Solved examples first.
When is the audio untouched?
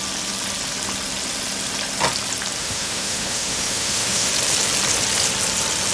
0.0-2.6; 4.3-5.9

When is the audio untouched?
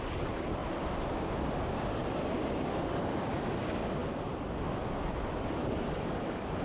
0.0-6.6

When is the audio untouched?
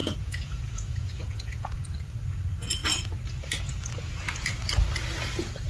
2.1-5.7